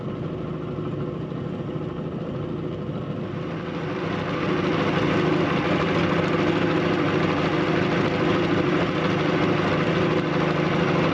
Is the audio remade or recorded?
recorded